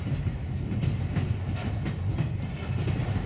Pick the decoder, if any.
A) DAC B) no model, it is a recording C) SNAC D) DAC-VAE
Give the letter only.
B